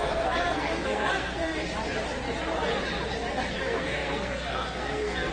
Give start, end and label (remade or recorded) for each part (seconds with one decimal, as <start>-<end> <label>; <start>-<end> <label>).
0.0-1.6 remade; 1.6-3.5 recorded; 3.5-5.3 remade